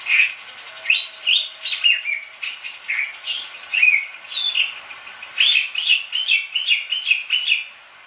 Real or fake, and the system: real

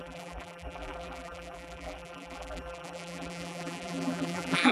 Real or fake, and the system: fake, vocoder, BigVGAN v2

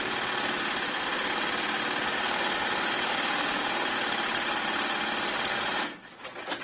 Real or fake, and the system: real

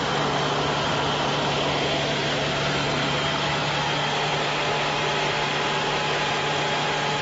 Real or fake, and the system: real